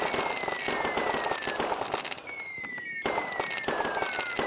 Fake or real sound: real